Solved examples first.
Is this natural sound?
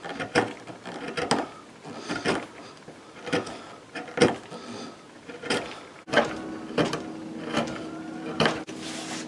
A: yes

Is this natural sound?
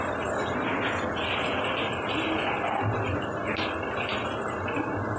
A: yes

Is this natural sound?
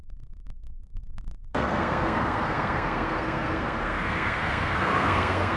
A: no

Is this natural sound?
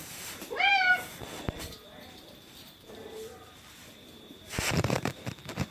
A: no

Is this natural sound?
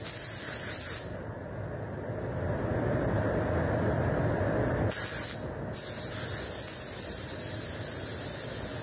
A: yes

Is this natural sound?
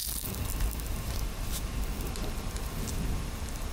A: yes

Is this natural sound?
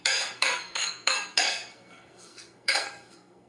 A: no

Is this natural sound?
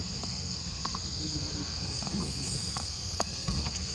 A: no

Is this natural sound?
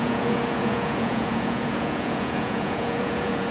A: no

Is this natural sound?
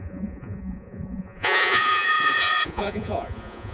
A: no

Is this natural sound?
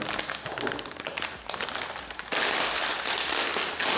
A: yes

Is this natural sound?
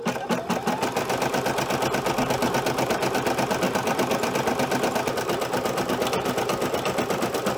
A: yes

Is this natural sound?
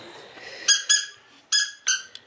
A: yes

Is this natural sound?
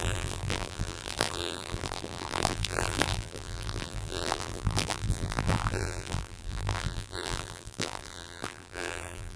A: no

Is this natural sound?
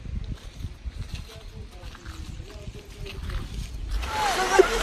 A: yes